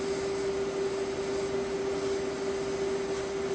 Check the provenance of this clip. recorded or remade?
recorded